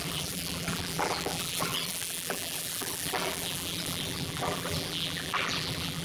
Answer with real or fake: fake